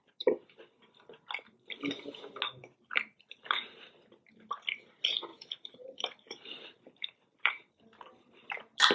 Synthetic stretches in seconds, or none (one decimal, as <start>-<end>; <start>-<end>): 2.6-3.5; 5.3-7.7